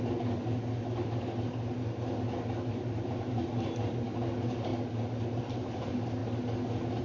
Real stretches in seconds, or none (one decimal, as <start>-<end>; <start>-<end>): 0.8-2.7; 4.7-5.3; 6.2-7.0